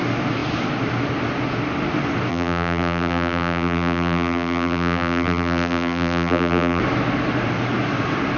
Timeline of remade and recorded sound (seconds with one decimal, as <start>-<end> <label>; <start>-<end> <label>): 0.0-2.3 recorded; 2.3-6.8 remade; 6.8-8.4 recorded